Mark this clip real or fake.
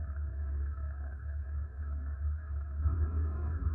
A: fake